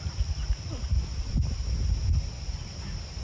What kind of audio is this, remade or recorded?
recorded